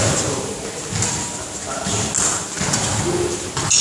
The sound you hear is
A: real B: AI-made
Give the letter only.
A